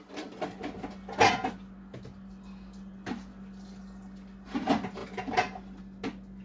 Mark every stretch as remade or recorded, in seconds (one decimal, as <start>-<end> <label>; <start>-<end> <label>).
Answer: 0.0-6.4 recorded